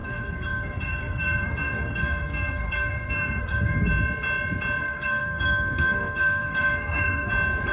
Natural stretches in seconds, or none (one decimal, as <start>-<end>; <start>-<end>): 3.9-4.8; 7.3-7.7